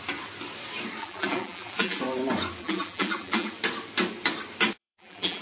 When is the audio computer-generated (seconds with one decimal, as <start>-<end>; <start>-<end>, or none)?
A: 1.0-2.0; 2.6-3.5; 4.8-5.4